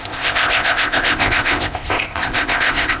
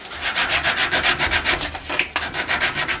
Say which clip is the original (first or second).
second